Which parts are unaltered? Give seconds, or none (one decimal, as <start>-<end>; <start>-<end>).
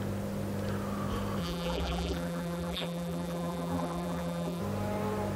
0.0-1.4; 4.6-5.4